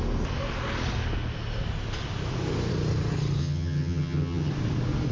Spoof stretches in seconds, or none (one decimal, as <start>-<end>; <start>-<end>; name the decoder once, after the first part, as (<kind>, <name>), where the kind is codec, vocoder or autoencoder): 3.4-4.5 (vocoder, HiFi-GAN)